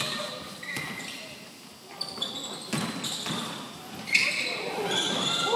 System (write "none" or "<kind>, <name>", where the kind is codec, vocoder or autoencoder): none